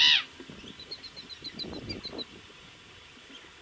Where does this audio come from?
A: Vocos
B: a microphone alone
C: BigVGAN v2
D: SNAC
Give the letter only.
B